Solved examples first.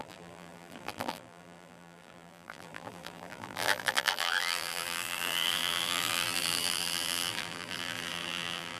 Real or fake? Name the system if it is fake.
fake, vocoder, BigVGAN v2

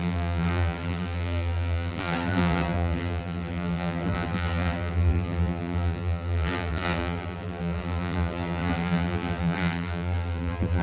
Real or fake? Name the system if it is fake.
fake, vocoder, BigVGAN v2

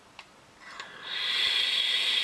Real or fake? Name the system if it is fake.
real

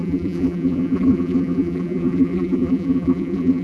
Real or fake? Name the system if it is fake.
fake, vocoder, BigVGAN v2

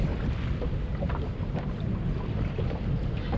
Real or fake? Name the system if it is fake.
real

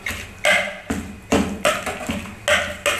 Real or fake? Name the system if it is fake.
real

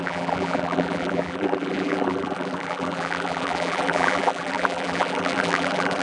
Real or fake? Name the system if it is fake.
fake, vocoder, BigVGAN v2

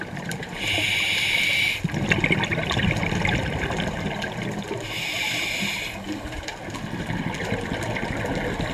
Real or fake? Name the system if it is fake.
real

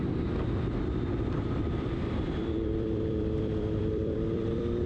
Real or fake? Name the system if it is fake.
fake, vocoder, BigVGAN v2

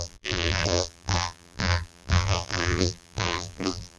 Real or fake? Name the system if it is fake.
fake, vocoder, BigVGAN v2